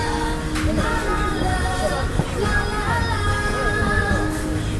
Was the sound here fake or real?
real